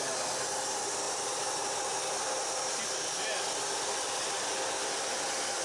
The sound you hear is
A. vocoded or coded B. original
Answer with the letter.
B